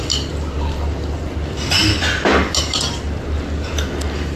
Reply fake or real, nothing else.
real